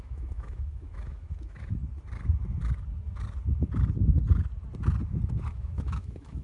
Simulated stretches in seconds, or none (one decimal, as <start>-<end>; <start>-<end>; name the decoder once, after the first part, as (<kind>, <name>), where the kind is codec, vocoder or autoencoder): 0.0-1.8 (autoencoder, DAC-VAE); 5.5-6.4